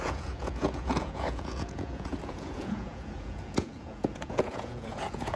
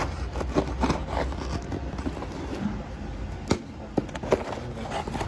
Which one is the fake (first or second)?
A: first